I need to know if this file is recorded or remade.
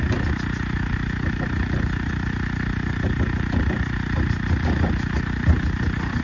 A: recorded